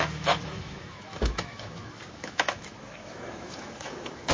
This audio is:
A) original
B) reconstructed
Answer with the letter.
B